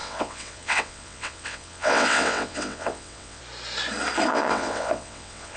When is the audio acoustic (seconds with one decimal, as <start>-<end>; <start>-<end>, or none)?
3.4-4.3